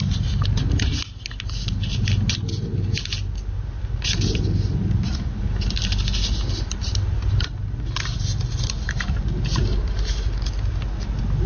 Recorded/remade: recorded